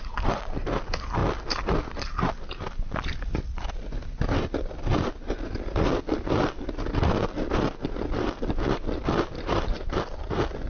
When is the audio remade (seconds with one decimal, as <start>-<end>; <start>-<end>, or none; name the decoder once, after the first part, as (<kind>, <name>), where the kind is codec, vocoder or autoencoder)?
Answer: none